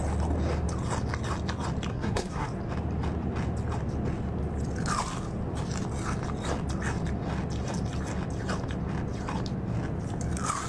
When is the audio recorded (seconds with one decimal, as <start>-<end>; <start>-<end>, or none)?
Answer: 0.0-1.9; 2.5-10.7